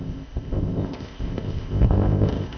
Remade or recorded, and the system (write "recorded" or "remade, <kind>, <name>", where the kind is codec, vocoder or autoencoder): remade, codec, ZipCodec